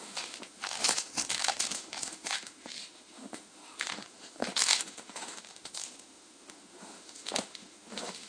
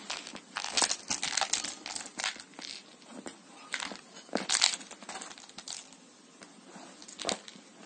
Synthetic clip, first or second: first